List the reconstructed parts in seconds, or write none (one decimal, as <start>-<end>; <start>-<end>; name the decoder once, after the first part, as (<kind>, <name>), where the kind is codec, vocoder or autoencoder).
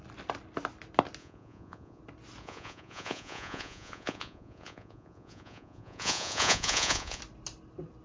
1.2-2.0 (vocoder, Vocos); 2.4-7.2